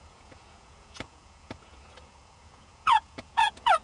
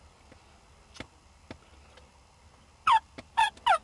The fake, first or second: first